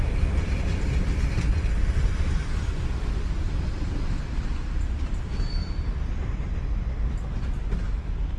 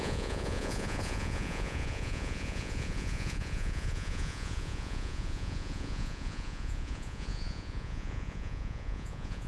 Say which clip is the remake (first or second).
second